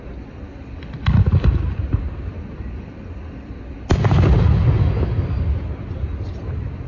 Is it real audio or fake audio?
real